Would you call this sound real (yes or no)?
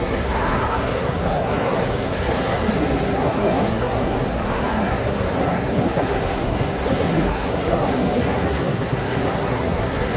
no